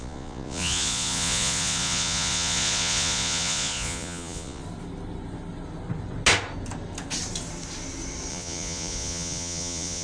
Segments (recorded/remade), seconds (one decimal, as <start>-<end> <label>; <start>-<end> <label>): 0.0-4.6 remade; 4.6-8.3 recorded; 8.3-10.0 remade

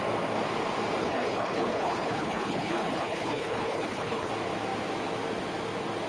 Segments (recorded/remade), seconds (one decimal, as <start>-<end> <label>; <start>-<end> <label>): 0.0-1.0 recorded; 1.0-4.3 remade; 4.3-6.1 recorded

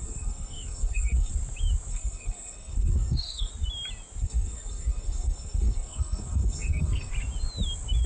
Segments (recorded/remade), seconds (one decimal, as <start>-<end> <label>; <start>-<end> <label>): 0.0-1.3 remade; 1.3-1.9 recorded; 1.9-3.5 remade; 3.5-4.2 recorded; 4.2-7.1 remade; 7.1-8.1 recorded

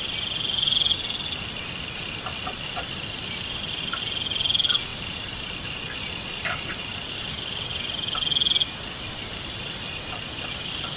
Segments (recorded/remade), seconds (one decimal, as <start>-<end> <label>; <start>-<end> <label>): 0.0-11.0 recorded

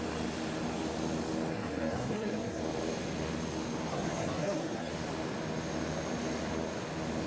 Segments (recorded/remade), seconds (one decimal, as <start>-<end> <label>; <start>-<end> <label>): 0.0-1.5 recorded; 1.5-2.6 remade; 2.6-3.9 recorded; 3.9-4.9 remade; 4.9-7.3 recorded